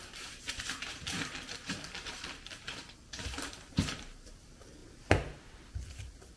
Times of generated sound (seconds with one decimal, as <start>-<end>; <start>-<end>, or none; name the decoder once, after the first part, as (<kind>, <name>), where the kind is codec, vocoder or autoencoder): 0.0-4.8 (vocoder, BigVGAN v2); 5.9-6.4